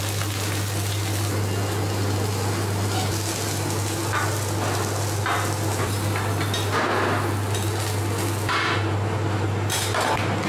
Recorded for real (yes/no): yes